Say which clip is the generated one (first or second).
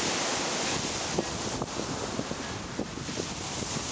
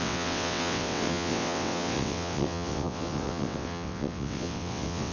second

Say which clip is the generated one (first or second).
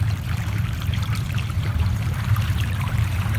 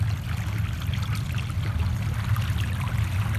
first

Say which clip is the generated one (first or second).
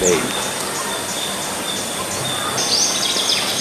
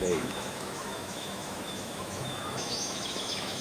second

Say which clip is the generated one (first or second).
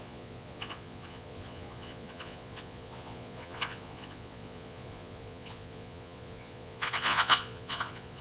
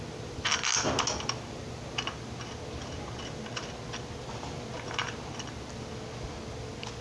first